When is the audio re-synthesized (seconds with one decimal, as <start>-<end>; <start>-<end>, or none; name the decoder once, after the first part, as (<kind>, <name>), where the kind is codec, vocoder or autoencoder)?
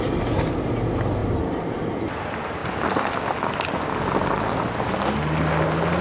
none